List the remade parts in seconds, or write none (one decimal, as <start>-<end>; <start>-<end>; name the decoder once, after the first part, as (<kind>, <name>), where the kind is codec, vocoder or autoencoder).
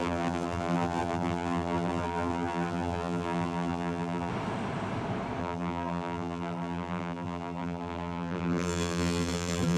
0.0-4.3 (vocoder, BigVGAN v2); 5.4-9.8